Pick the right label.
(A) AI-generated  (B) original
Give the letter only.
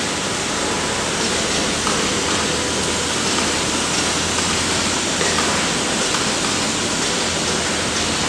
B